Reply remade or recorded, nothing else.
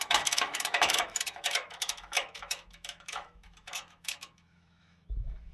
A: remade